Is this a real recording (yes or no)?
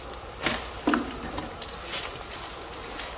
yes